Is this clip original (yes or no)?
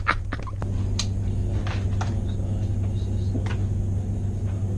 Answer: yes